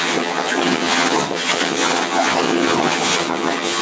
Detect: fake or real fake